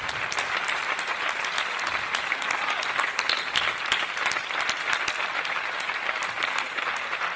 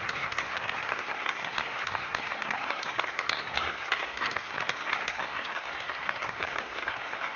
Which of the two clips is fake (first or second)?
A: second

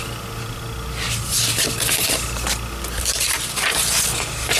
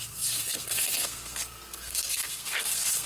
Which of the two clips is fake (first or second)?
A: second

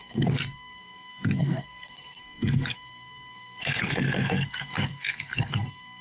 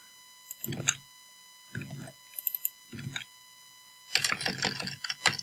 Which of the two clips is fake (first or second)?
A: first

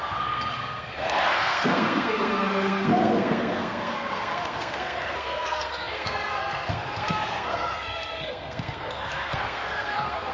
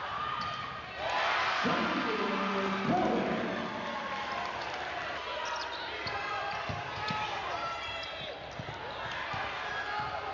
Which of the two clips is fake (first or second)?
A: first